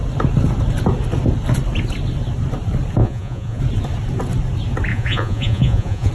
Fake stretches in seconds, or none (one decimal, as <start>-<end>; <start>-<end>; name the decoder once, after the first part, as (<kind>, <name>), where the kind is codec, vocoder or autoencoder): 3.0-3.6 (vocoder, Vocos); 4.9-6.1